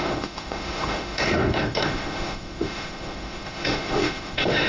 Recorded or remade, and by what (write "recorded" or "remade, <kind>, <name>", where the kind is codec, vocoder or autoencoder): remade, autoencoder, DAC-VAE